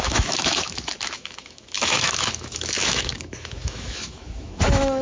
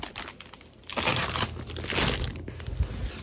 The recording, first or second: second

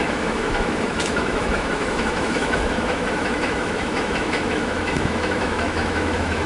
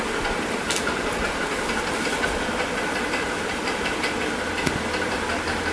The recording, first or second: second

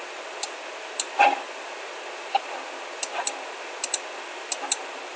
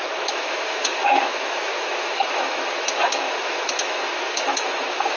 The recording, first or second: first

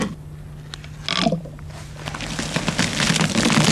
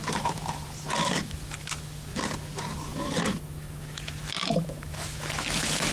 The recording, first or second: first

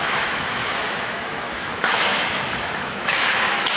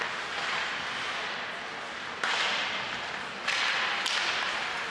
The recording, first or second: second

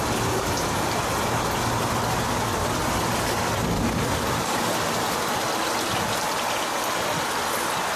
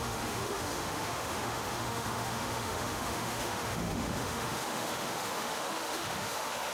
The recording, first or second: first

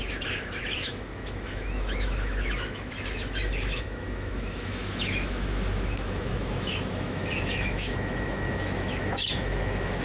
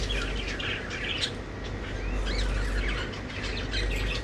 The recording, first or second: second